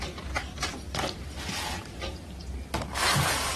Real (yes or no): yes